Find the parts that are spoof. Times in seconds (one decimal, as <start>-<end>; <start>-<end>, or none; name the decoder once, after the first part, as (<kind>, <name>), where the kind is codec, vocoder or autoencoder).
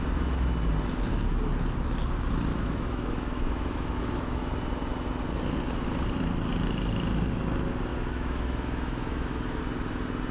2.5-4.5 (autoencoder, DAC-VAE); 7.9-9.6